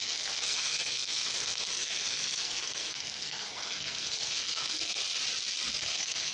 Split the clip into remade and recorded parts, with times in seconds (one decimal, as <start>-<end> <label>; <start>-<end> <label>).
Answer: 0.0-5.0 remade; 5.0-5.8 recorded; 5.8-6.3 remade